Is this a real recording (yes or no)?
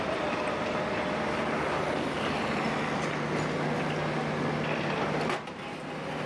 yes